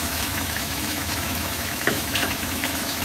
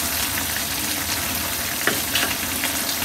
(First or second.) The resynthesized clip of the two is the first